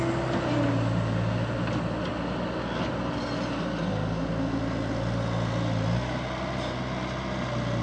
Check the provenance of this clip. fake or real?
real